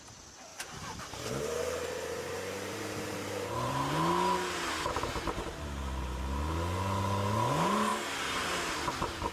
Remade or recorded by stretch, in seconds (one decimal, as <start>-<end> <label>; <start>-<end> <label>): 0.0-0.5 recorded; 0.5-3.9 remade; 3.9-7.9 recorded; 7.9-8.9 remade; 8.9-9.3 recorded